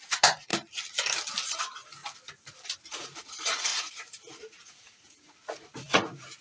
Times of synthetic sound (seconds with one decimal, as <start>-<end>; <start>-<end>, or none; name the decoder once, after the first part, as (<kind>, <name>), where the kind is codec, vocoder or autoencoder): 0.0-0.5 (vocoder, Vocos); 1.5-2.0; 2.9-6.4